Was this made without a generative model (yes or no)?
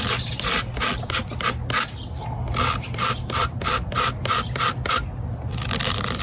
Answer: yes